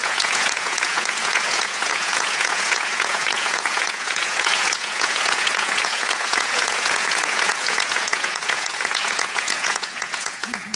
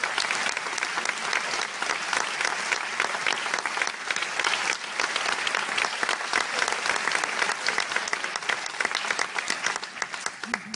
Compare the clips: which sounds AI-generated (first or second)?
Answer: first